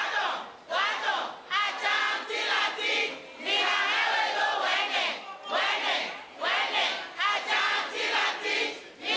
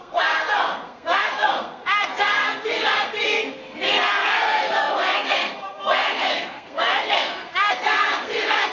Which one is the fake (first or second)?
second